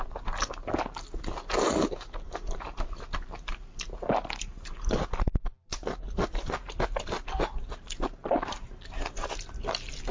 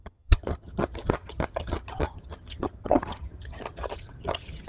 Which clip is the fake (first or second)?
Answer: second